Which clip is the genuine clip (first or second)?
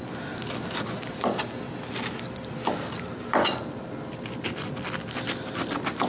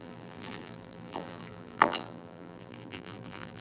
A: first